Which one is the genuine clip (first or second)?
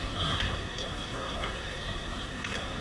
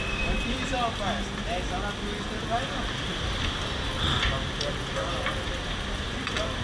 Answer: second